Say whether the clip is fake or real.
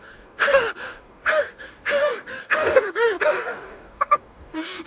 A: fake